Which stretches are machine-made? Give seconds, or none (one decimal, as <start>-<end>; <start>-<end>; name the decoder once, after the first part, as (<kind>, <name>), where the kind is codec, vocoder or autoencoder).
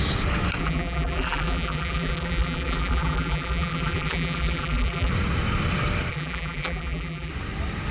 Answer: 0.6-5.1 (vocoder, BigVGAN v2); 6.1-7.3